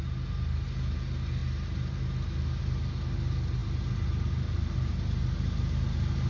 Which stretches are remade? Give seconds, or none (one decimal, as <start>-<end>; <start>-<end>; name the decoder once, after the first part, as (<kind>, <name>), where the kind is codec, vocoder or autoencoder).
none